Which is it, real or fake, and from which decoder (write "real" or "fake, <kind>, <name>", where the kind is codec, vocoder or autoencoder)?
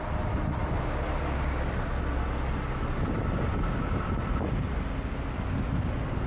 real